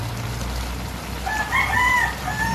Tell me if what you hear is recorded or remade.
recorded